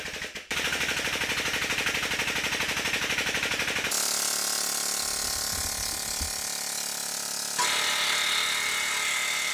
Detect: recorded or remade recorded